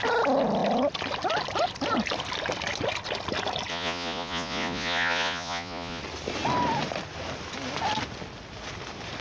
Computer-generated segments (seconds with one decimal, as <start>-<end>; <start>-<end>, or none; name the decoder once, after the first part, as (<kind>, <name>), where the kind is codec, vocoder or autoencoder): 3.7-6.0 (vocoder, Vocos)